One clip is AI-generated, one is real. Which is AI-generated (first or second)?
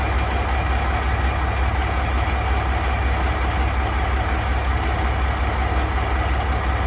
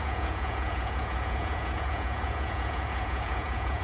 second